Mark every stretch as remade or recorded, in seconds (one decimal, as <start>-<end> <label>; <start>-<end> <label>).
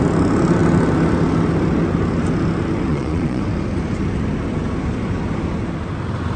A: 0.0-2.9 recorded; 2.9-3.4 remade; 3.4-6.4 recorded